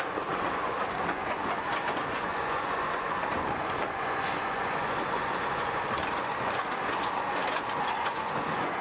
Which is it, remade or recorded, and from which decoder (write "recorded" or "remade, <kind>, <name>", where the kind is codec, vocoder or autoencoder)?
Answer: remade, vocoder, Vocos